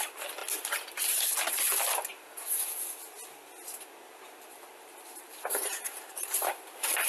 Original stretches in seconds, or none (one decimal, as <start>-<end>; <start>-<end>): 0.0-4.7; 6.5-7.1